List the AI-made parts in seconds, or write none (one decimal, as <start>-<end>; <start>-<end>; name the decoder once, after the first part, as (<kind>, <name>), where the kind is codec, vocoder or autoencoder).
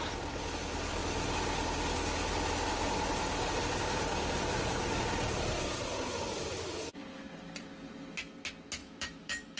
8.8-9.6 (autoencoder, DAC-VAE)